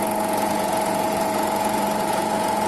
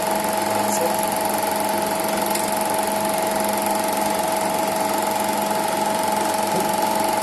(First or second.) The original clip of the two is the second